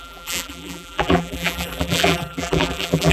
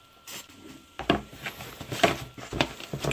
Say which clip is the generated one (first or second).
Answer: first